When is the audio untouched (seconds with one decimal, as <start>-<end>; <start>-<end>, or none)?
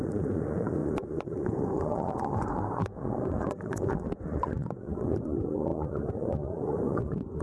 none